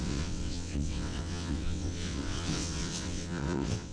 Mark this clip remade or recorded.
remade